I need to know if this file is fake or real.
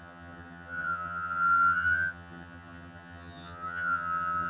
fake